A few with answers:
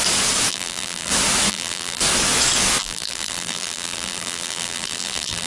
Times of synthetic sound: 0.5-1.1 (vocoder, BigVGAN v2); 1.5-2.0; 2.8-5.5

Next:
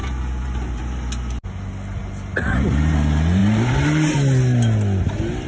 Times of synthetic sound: 0.0-0.8 (vocoder, BigVGAN v2); 3.4-4.1

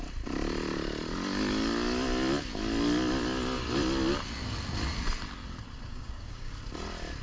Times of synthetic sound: 5.9-6.5 (codec, DAC)

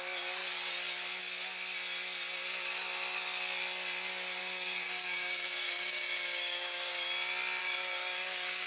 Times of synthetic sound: 4.4-6.9 (codec, DAC); 7.6-8.7

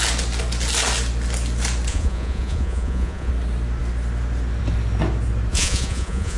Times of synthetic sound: 1.9-3.3 (vocoder, Vocos); 5.5-6.4

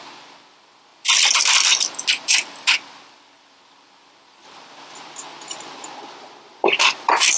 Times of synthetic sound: none